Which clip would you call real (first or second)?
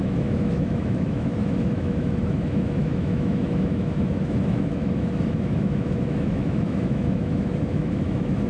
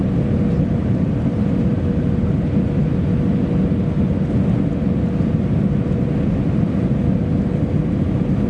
second